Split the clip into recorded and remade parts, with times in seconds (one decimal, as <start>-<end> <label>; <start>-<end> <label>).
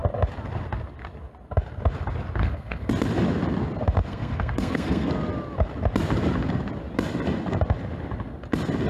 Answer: 0.0-2.4 recorded; 2.4-2.9 remade; 2.9-4.0 recorded; 4.0-5.1 remade; 5.1-8.9 recorded